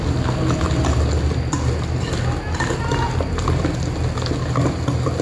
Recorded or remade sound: recorded